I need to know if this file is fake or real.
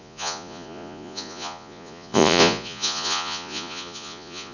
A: fake